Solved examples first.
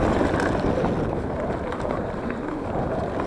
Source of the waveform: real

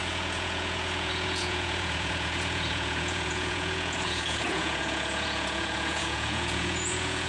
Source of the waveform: fake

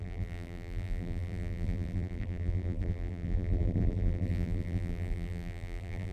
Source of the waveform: fake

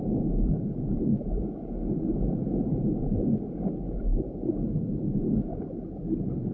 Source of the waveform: real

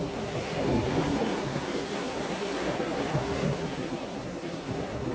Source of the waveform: fake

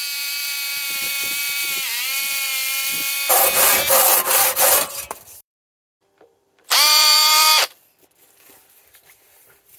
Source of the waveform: fake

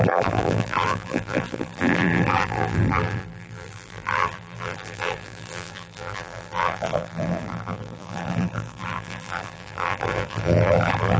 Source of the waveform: fake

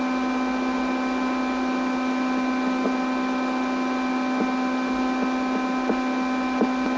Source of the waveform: real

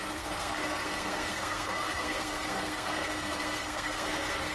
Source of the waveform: fake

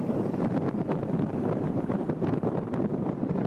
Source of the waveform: fake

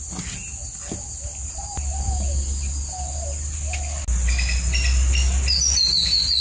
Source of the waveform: real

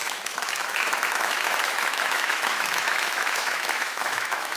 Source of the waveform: fake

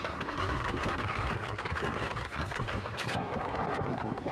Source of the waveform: fake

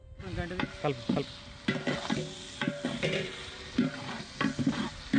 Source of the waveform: real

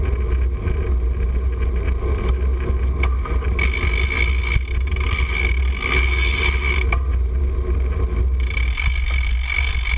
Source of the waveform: real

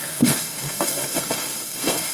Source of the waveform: fake